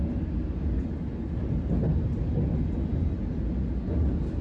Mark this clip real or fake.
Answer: real